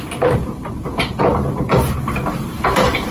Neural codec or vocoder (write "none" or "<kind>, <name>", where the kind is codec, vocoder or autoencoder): vocoder, BigVGAN v2